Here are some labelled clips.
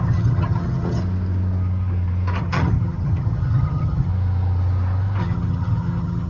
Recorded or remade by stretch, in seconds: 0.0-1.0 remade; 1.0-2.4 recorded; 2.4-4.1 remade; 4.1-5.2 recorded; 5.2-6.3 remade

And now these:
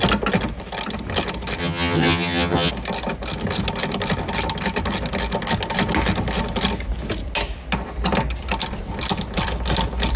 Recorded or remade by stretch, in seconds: 0.0-1.6 recorded; 1.6-2.7 remade; 2.7-10.2 recorded